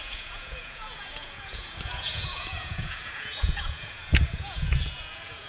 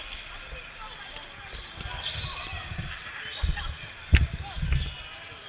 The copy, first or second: first